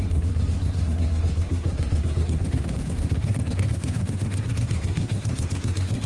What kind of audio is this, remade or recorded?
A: remade